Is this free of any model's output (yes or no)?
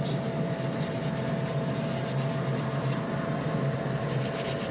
yes